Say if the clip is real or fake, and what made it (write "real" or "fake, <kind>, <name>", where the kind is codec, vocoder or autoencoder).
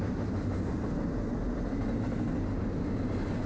real